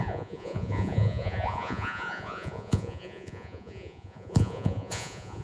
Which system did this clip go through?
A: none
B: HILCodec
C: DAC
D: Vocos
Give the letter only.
D